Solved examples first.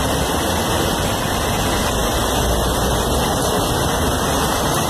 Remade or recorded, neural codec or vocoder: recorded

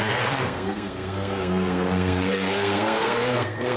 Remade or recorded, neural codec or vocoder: remade, codec, SNAC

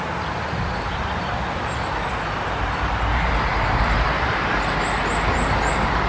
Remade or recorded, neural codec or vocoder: recorded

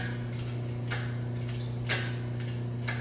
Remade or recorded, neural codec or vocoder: recorded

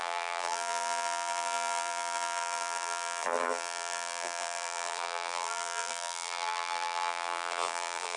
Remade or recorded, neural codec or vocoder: remade, vocoder, BigVGAN v2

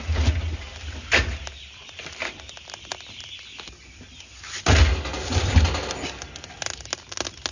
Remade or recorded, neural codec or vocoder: recorded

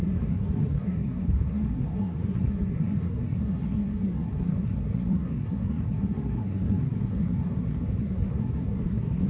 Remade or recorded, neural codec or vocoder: remade, codec, SNAC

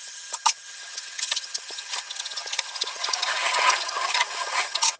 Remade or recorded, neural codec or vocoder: remade, vocoder, HiFi-GAN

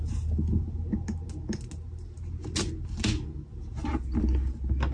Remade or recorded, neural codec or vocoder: recorded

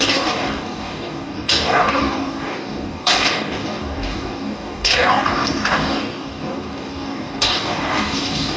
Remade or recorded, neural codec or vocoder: remade, codec, DAC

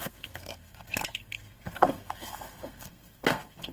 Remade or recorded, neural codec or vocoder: remade, codec, SNAC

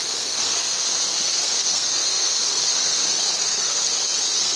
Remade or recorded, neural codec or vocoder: remade, codec, SNAC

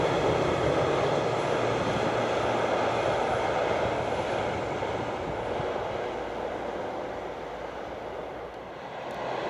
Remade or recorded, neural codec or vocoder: recorded